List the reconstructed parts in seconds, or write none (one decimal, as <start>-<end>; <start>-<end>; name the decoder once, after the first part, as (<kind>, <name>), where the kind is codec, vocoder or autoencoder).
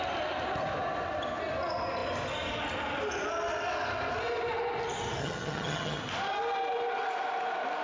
5.2-6.0 (vocoder, HiFi-GAN)